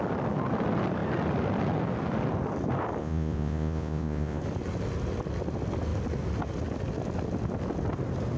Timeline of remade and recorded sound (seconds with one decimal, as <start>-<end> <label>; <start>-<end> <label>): 0.0-3.0 recorded; 3.0-4.4 remade; 4.4-8.4 recorded